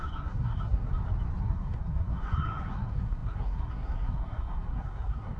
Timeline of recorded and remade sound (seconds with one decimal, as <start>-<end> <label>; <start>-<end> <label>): 0.0-0.9 remade; 0.9-1.4 recorded; 1.4-5.4 remade